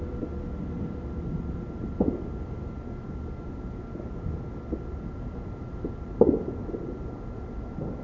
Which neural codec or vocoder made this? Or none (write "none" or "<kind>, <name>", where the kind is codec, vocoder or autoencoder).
none